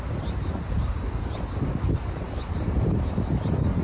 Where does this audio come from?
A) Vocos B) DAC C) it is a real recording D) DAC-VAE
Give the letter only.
C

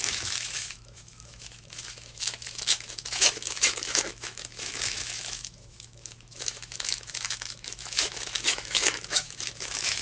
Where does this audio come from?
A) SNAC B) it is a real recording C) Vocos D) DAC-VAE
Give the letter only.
D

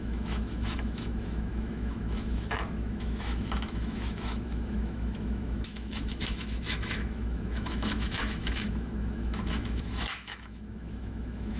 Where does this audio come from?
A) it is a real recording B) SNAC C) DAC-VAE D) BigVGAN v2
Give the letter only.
C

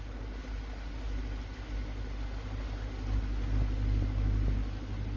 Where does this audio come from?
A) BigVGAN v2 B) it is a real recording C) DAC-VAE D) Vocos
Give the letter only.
B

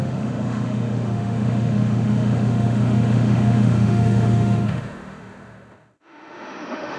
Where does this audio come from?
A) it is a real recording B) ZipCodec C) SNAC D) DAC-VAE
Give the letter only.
D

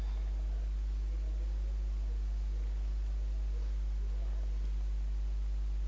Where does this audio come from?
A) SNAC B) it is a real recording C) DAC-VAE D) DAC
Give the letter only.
B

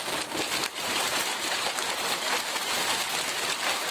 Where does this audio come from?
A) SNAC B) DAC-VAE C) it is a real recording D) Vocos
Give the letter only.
C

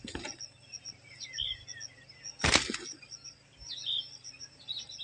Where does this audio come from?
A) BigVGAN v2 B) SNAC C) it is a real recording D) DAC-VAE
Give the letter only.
C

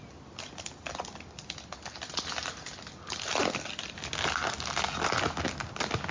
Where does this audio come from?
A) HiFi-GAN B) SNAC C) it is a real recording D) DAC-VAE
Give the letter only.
C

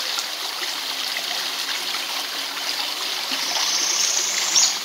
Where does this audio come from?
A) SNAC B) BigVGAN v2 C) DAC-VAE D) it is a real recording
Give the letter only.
D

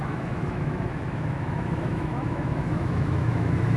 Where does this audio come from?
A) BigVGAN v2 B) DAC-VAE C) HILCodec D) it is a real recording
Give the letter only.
B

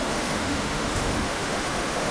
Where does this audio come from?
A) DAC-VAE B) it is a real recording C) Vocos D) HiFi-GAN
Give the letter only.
A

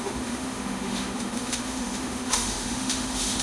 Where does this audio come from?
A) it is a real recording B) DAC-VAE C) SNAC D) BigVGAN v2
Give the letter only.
B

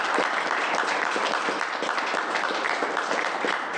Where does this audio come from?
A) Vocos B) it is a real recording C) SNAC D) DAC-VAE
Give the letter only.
B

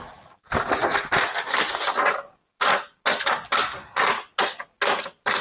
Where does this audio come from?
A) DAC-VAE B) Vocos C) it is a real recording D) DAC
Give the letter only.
C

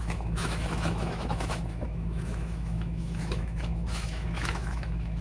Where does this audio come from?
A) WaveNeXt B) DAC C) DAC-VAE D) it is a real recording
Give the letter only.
C